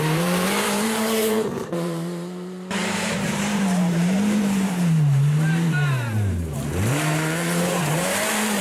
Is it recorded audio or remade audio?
remade